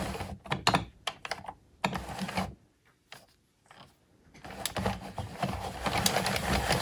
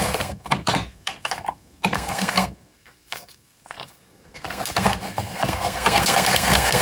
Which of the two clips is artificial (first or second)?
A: second